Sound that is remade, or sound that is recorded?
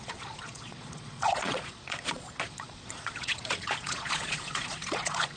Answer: remade